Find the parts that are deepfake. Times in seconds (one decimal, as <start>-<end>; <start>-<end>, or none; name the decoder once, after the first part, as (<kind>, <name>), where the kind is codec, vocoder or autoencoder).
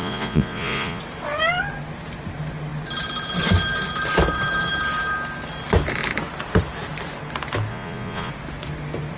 0.0-1.0 (vocoder, Vocos); 7.7-8.3